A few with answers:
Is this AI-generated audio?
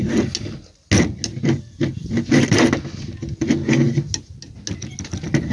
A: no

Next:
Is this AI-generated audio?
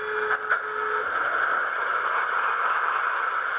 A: no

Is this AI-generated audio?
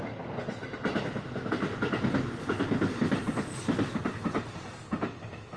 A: no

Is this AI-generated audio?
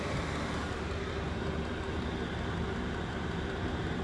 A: no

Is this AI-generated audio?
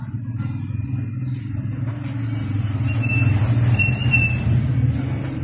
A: no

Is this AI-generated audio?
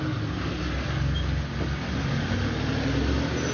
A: no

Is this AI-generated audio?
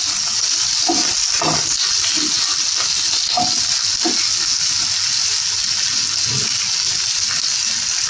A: no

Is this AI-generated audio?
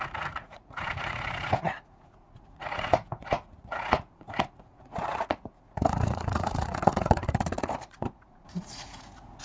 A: yes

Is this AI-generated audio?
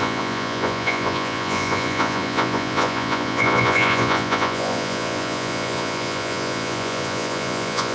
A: yes